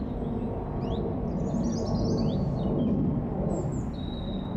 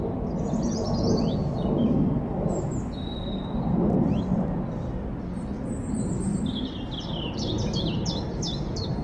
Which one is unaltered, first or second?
first